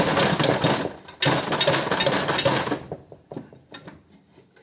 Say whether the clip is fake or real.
real